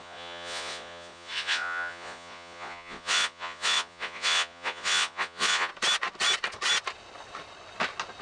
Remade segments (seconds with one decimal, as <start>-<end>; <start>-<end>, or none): 0.0-5.7

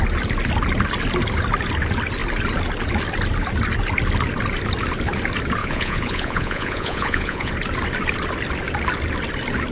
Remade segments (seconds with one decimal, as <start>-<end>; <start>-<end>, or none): 5.6-7.5

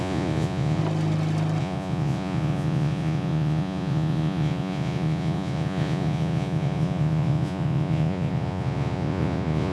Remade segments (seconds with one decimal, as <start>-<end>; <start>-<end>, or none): 0.0-0.8; 1.6-9.7